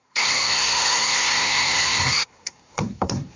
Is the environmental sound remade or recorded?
remade